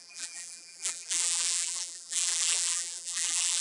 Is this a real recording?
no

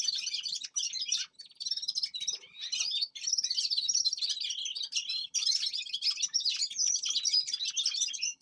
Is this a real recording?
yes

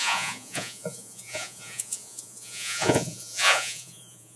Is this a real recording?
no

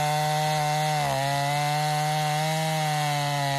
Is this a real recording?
yes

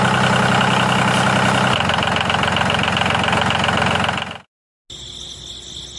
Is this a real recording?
yes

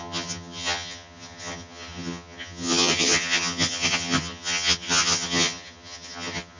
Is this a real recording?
no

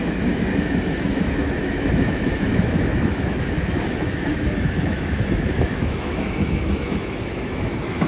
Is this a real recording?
no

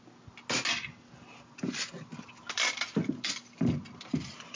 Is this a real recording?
yes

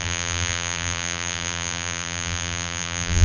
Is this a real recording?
no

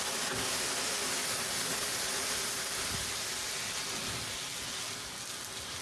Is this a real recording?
yes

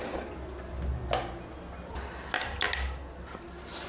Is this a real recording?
yes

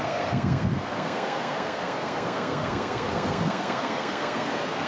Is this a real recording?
no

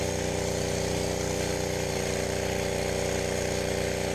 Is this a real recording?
yes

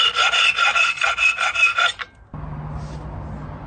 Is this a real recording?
yes